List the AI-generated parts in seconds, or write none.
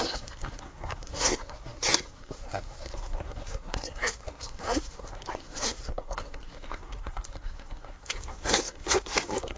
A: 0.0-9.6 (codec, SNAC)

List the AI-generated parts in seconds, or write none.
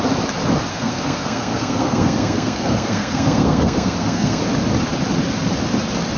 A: 0.7-4.4 (codec, SNAC)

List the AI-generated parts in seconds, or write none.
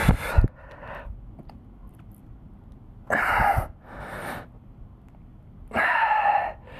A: none